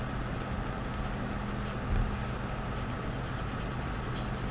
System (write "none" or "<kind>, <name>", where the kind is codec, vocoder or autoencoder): none